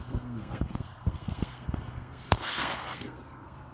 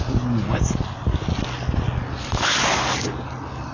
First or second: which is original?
second